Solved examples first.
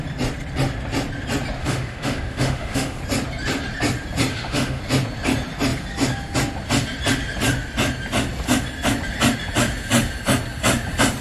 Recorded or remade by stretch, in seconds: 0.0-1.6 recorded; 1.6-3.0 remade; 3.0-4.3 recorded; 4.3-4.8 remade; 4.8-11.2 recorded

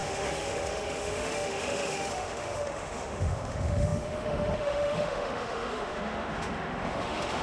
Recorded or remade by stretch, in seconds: 0.0-7.4 remade

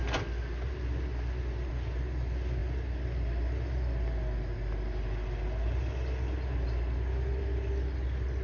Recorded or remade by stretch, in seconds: 0.0-8.4 recorded